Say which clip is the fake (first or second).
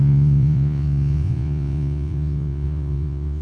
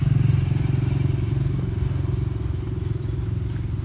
first